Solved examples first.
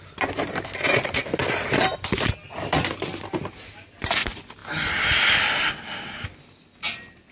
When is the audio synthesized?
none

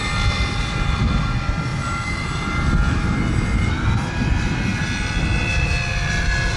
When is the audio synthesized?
none

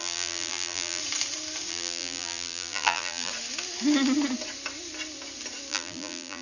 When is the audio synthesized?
0.0-1.0 (vocoder, BigVGAN v2); 1.7-3.3; 5.7-6.4

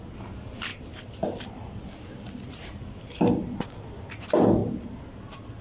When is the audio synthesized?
none

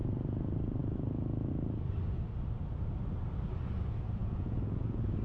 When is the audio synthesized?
4.2-5.2 (vocoder, Vocos)